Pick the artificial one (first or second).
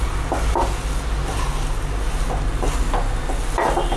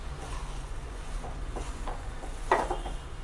second